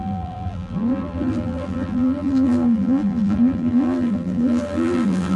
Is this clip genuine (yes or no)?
no